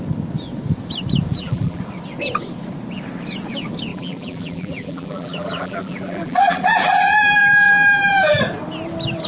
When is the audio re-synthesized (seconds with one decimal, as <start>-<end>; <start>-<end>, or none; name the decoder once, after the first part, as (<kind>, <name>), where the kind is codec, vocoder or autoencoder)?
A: 1.3-1.8 (vocoder, BigVGAN v2); 3.9-8.4